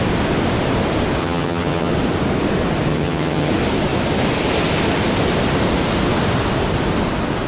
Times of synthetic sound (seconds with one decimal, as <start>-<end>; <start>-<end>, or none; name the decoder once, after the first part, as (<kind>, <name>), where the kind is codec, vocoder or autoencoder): 1.2-1.9 (vocoder, HiFi-GAN); 2.9-3.5